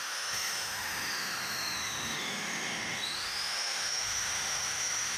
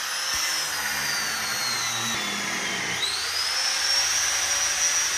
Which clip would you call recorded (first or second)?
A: second